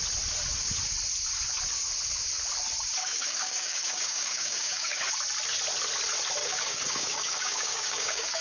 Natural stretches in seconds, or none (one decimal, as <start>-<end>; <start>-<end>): 0.0-3.0; 5.0-6.4